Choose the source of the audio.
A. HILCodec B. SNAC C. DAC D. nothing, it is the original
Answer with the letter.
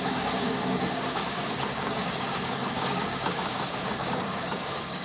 C